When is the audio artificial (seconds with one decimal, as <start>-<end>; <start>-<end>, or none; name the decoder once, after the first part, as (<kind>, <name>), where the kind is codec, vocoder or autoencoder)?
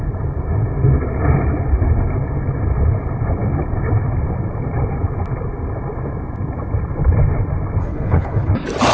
7.8-8.5 (codec, HILCodec)